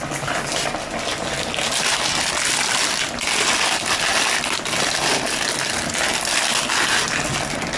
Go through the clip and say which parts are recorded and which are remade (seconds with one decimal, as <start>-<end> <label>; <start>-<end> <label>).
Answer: 0.0-4.1 recorded; 4.1-5.9 remade; 5.9-7.8 recorded